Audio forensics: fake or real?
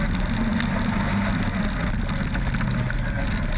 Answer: real